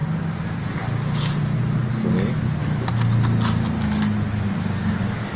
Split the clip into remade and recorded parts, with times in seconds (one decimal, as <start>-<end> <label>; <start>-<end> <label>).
0.0-5.4 recorded